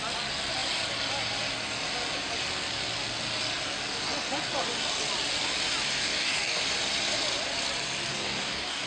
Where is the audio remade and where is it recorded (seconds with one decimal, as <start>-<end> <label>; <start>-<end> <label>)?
0.0-6.0 recorded; 6.0-6.6 remade; 6.6-8.1 recorded; 8.1-8.9 remade

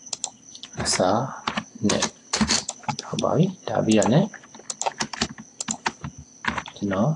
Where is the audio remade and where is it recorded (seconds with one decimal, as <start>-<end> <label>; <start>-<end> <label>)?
0.0-7.2 recorded

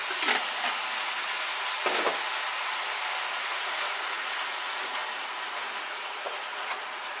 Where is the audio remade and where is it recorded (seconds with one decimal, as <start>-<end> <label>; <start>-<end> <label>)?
0.0-3.2 recorded; 3.2-5.0 remade; 5.0-5.5 recorded; 5.5-7.2 remade

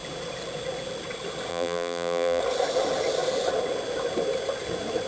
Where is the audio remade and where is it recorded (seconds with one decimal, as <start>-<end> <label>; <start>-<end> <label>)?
0.0-1.5 recorded; 1.5-2.4 remade; 2.4-5.1 recorded

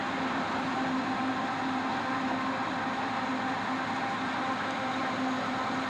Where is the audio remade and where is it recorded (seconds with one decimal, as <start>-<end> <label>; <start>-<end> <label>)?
0.0-5.9 recorded

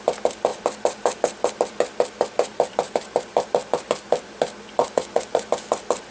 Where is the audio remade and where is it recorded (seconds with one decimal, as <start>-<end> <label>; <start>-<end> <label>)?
0.0-4.8 recorded; 4.8-5.5 remade; 5.5-6.1 recorded